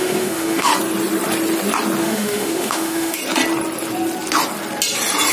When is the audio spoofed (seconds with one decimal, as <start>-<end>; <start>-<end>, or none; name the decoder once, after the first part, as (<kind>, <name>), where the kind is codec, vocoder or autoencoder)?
0.0-0.7 (autoencoder, DAC-VAE); 2.0-3.2